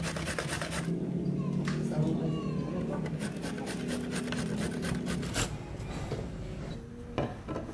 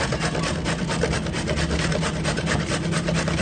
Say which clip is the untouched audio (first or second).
first